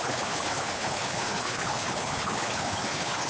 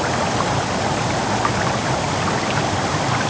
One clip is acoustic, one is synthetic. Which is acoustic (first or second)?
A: second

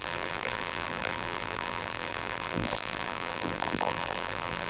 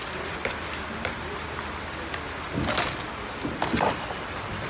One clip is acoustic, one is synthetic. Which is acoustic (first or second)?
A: second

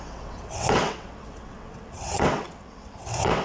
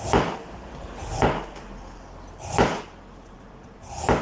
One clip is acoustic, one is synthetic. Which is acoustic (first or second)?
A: second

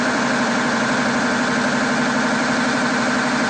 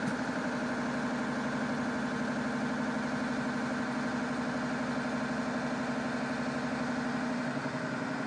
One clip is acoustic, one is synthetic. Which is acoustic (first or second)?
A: second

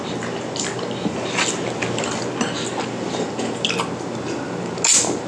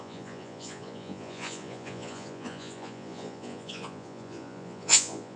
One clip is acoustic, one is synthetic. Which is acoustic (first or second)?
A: first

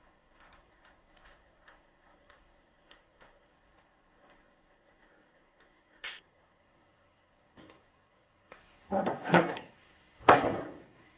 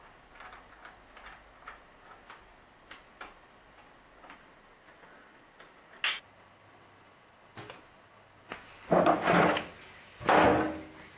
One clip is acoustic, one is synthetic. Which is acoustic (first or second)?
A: second